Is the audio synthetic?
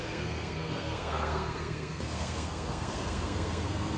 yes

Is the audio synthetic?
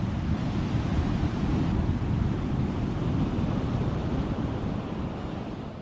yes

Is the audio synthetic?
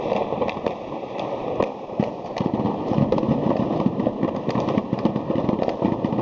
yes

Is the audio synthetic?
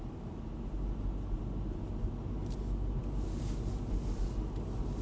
no